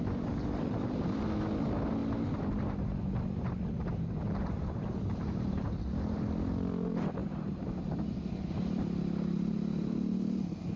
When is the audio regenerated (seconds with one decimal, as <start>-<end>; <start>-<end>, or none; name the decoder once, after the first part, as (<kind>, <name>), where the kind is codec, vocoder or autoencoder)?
none